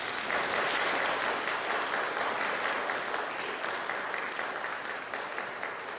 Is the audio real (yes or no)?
yes